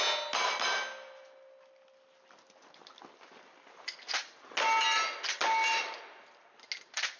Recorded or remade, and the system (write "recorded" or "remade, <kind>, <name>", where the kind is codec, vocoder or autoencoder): recorded